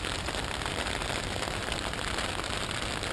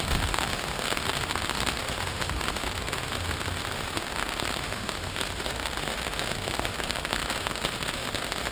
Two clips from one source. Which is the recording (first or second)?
first